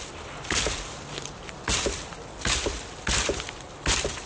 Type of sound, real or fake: real